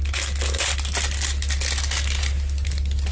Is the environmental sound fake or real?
real